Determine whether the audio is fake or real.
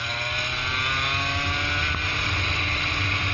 real